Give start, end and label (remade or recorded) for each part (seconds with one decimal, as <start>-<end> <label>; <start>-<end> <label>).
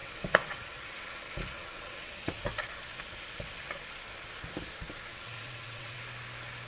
0.0-2.4 remade; 2.4-5.1 recorded; 5.1-6.0 remade; 6.0-6.7 recorded